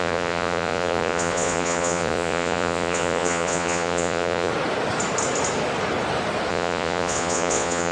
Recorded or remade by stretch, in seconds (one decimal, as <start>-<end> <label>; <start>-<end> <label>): 0.0-4.5 remade; 4.5-6.5 recorded; 6.5-7.9 remade